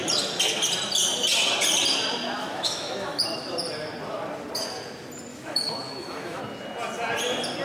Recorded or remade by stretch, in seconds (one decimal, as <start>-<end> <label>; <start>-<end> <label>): 0.0-2.4 recorded; 2.4-3.2 remade; 3.2-5.3 recorded; 5.3-6.4 remade; 6.4-7.6 recorded